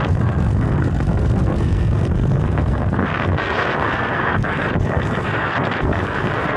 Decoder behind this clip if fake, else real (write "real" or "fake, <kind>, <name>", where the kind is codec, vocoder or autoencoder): fake, codec, SNAC